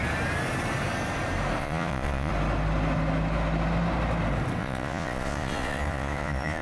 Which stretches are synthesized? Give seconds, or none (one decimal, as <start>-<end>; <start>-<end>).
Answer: 1.6-2.3; 4.6-6.6